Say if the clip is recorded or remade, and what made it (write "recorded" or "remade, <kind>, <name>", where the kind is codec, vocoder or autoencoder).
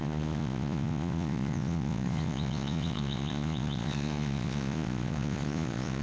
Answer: remade, vocoder, Vocos